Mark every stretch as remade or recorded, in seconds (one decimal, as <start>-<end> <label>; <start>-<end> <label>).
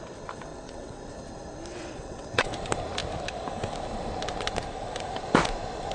0.0-0.5 recorded; 0.5-1.1 remade; 1.1-1.7 recorded; 1.7-2.5 remade; 2.5-5.9 recorded